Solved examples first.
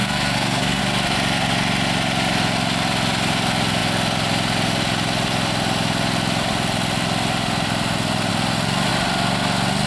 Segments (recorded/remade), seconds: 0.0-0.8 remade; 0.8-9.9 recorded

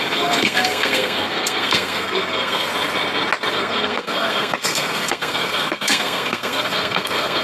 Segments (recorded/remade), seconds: 0.0-2.7 remade; 2.7-3.5 recorded; 3.5-7.4 remade

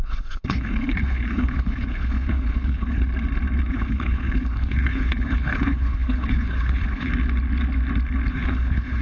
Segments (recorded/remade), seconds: 0.0-3.1 remade; 3.1-3.7 recorded; 3.7-7.1 remade; 7.1-8.3 recorded; 8.3-9.0 remade